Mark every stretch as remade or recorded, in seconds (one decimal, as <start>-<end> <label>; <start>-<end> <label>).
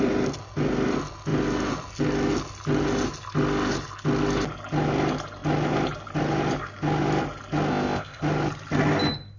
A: 0.0-7.7 recorded; 7.7-8.2 remade; 8.2-9.4 recorded